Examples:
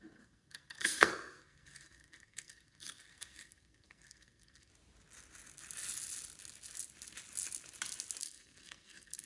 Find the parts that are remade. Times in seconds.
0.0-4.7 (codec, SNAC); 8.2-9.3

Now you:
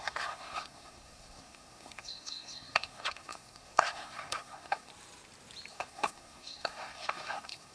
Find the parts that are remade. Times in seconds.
0.0-4.9 (codec, SNAC); 5.7-7.7

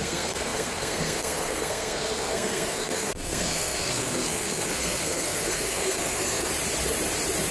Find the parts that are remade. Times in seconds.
0.0-6.5 (codec, SNAC)

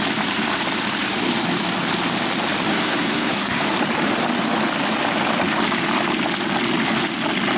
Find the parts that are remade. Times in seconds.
2.7-3.6 (codec, SNAC)

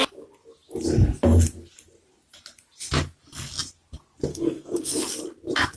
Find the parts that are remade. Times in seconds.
4.3-5.0 (codec, SNAC)

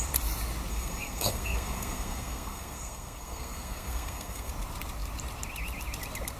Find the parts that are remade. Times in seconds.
0.7-4.5 (codec, SNAC)

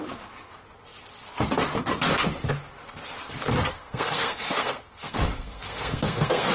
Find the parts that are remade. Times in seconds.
3.7-6.5 (codec, SNAC)